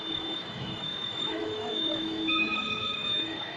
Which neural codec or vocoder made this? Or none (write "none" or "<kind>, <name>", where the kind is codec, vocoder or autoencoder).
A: autoencoder, DAC-VAE